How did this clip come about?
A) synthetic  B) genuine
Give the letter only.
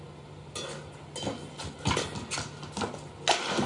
B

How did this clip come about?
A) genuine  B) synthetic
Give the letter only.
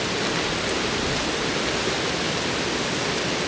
A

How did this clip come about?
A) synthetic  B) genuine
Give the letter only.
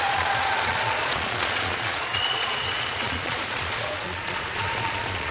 A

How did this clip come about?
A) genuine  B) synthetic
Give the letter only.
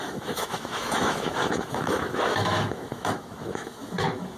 B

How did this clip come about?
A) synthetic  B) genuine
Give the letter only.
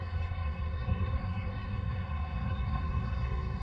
A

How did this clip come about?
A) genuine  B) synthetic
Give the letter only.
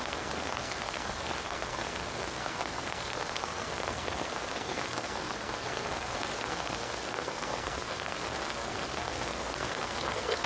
B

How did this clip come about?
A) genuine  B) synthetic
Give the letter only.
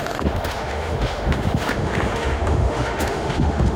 B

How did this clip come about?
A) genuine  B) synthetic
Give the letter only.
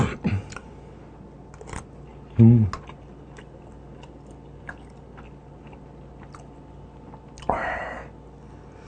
A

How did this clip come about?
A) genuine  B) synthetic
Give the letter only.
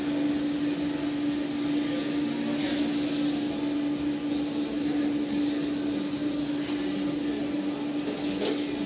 A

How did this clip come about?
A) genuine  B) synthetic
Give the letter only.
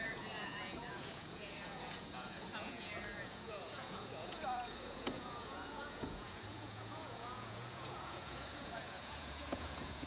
B